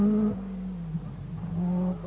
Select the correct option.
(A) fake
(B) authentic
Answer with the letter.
B